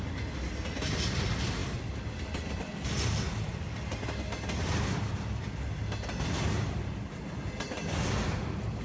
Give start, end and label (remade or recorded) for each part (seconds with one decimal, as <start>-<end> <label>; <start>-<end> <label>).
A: 0.0-8.8 recorded